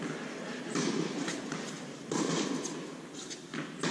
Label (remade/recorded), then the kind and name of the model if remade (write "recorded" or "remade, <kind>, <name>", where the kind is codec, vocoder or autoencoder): recorded